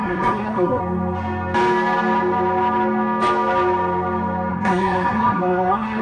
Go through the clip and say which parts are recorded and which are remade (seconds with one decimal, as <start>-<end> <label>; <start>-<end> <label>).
0.0-0.8 remade; 0.8-4.5 recorded; 4.5-6.0 remade